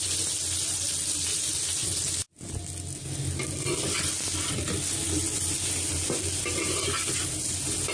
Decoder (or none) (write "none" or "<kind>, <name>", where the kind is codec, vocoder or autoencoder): none